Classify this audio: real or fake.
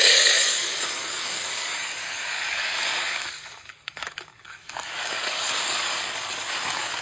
fake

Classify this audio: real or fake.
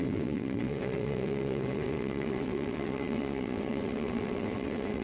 fake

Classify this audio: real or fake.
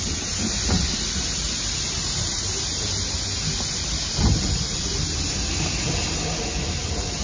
real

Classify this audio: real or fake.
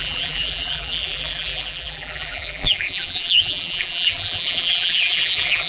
fake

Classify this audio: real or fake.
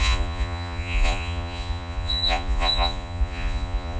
fake